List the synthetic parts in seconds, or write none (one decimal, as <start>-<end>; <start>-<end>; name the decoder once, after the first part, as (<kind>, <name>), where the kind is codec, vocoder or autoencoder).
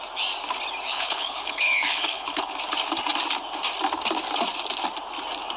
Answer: 0.9-2.5 (codec, HILCodec)